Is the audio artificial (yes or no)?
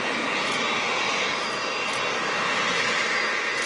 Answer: no